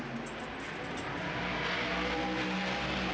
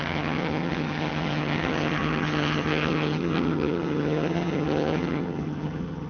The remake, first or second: second